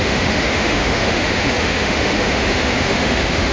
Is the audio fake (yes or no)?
yes